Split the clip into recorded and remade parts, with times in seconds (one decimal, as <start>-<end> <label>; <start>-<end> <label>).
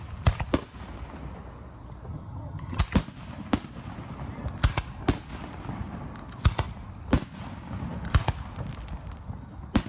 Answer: 0.0-2.1 recorded; 2.1-2.8 remade; 2.8-9.9 recorded